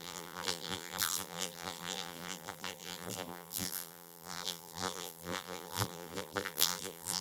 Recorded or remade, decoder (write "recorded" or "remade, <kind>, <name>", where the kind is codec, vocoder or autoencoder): remade, vocoder, BigVGAN v2